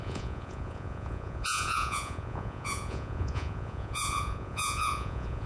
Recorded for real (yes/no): no